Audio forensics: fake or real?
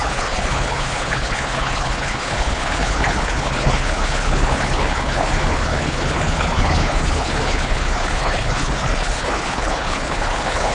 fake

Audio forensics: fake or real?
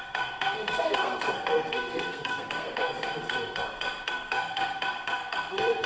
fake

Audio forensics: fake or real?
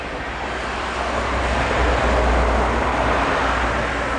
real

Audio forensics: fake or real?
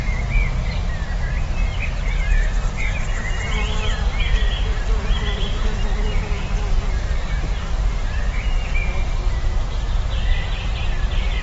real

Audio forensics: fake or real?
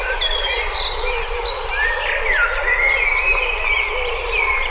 fake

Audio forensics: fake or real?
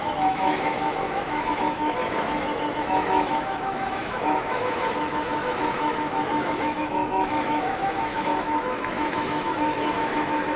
fake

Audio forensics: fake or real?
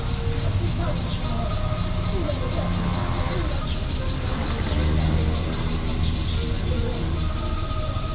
real